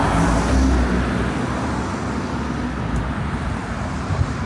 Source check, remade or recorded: recorded